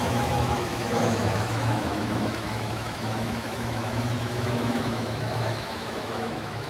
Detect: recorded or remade remade